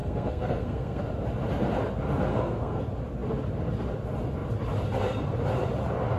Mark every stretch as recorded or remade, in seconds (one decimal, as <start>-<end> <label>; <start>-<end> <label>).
0.0-1.0 remade; 1.0-2.3 recorded; 2.3-2.8 remade; 2.8-6.2 recorded